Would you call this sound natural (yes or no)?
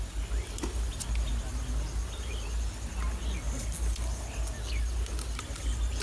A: yes